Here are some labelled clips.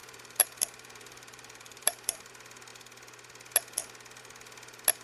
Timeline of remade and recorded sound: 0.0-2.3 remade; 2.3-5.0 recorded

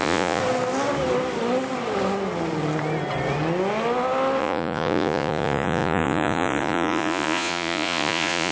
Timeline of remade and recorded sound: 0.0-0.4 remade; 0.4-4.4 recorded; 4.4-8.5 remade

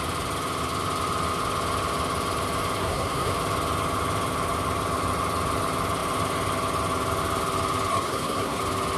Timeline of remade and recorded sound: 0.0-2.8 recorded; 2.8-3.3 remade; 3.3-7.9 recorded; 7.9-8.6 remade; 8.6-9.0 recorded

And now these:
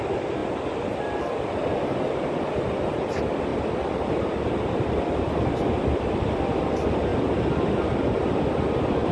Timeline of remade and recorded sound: 0.0-0.4 recorded; 0.4-2.8 remade; 2.8-3.5 recorded; 3.5-5.3 remade; 5.3-7.1 recorded; 7.1-8.7 remade; 8.7-9.1 recorded

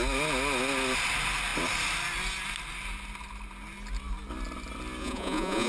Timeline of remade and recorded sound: 0.0-5.0 recorded; 5.0-5.7 remade